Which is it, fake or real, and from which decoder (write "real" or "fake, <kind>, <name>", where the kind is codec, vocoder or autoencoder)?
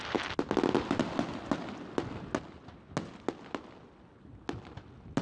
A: real